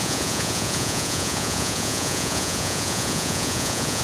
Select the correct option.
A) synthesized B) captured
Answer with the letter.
A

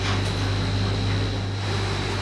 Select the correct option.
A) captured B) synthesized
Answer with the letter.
A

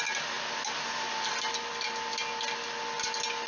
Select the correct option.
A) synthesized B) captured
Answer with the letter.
B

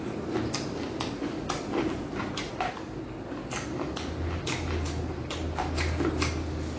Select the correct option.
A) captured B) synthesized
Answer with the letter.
A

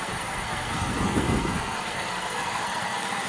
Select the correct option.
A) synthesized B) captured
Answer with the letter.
A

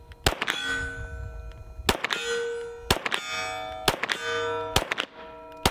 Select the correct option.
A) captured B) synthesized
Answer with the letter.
A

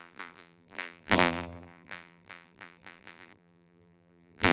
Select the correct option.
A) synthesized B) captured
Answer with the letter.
A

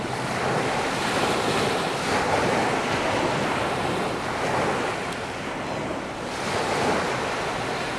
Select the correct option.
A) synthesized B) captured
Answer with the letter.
B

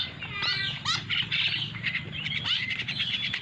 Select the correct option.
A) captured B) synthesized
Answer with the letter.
A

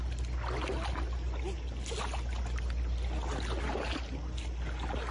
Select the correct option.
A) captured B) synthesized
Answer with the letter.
A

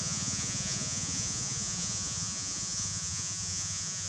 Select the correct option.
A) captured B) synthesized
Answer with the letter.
B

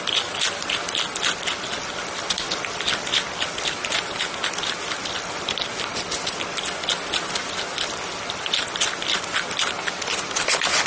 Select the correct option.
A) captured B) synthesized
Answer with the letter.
A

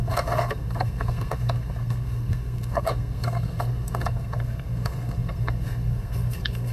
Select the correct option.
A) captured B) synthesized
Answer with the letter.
B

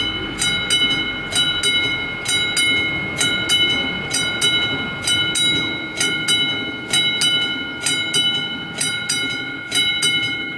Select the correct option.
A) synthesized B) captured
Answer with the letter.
B